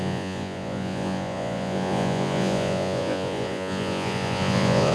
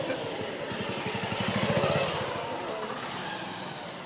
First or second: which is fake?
first